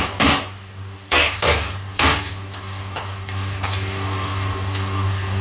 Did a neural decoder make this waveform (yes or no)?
yes